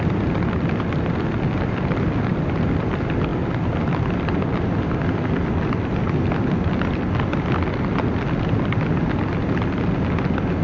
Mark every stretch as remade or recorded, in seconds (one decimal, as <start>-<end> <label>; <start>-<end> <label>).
0.0-10.6 recorded